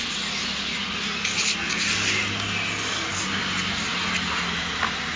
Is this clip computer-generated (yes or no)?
no